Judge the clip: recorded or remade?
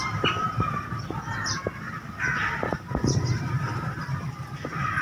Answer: recorded